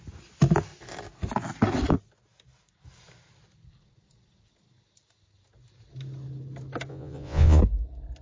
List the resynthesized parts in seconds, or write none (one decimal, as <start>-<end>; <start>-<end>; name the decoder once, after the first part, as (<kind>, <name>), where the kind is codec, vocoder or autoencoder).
6.9-7.6 (vocoder, Vocos)